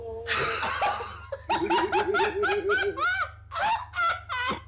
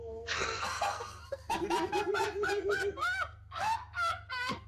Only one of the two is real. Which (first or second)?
first